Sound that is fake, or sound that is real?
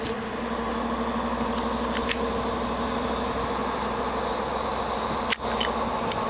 real